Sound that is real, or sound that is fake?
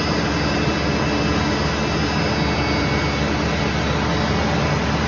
real